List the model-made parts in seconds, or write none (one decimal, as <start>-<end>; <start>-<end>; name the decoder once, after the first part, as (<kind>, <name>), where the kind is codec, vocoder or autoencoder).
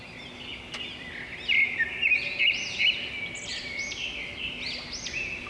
none